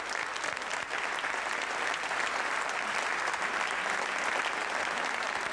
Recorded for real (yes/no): yes